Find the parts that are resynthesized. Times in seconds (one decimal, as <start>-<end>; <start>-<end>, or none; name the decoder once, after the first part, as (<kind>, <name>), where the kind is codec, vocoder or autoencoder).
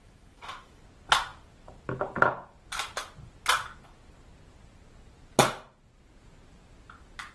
0.0-0.8 (autoencoder, DAC-VAE)